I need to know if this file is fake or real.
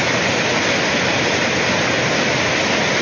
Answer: real